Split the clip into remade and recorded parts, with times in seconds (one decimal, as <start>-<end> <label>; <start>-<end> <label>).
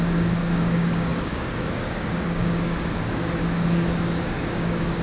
0.0-5.0 remade